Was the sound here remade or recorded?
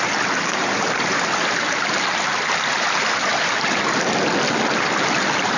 recorded